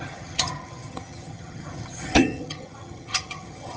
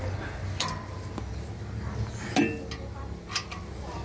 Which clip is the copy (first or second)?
first